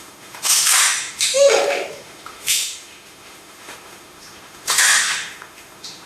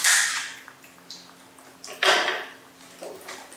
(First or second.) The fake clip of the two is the first